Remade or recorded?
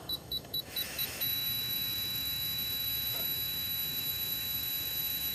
remade